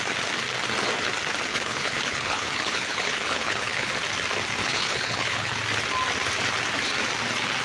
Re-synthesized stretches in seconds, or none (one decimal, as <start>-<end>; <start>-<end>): 1.5-3.9; 4.6-5.6